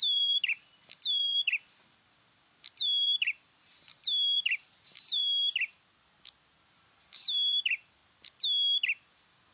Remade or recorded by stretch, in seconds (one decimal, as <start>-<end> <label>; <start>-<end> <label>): 0.0-5.2 remade; 5.2-6.7 recorded; 6.7-8.0 remade; 8.0-9.1 recorded; 9.1-9.5 remade